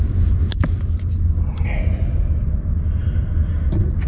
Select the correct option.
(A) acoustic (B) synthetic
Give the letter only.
A